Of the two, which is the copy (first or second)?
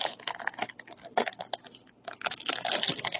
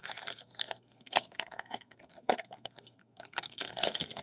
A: second